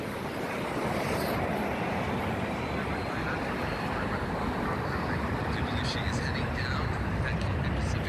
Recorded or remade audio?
recorded